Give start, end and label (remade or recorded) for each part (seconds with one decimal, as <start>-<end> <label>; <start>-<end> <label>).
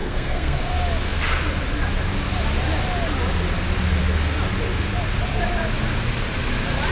0.0-0.6 remade; 0.6-6.9 recorded